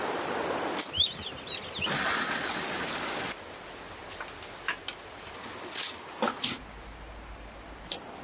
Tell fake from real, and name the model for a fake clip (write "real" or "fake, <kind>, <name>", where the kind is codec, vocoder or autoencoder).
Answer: real